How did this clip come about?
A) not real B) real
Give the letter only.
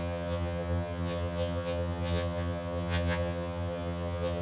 A